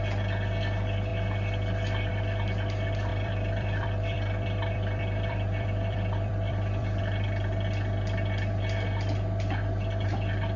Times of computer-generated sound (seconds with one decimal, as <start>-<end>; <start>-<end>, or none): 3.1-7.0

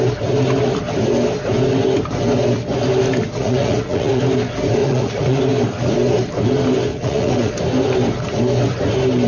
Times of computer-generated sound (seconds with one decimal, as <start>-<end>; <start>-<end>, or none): 3.4-4.2; 4.8-5.4; 6.9-7.5

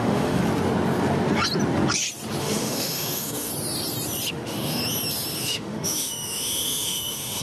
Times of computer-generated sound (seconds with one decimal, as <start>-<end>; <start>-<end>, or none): 0.0-0.4; 2.4-3.5; 4.3-4.8; 5.4-7.4

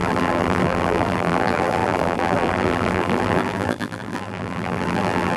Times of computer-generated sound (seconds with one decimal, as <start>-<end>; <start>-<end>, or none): 0.0-5.4

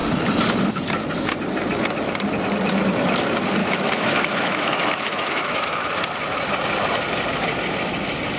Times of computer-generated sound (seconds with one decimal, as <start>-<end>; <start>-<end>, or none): 3.6-6.0

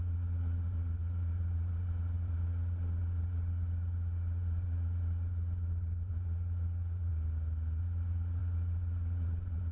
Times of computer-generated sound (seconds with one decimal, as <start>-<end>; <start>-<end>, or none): 0.0-7.1; 7.8-9.7